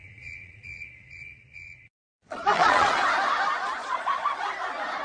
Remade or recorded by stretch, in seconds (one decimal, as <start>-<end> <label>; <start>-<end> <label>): 0.0-3.0 remade; 3.0-3.8 recorded; 3.8-4.4 remade; 4.4-5.0 recorded